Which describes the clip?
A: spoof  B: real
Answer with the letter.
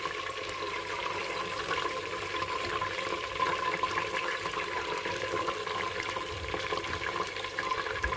A